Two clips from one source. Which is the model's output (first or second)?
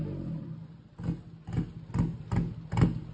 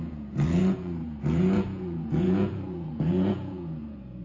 second